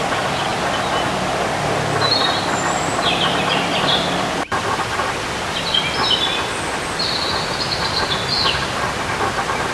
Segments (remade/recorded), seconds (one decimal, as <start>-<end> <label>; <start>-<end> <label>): 0.0-9.7 recorded

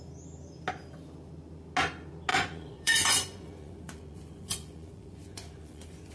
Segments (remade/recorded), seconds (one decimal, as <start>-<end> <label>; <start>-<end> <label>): 0.0-2.3 recorded; 2.3-6.1 remade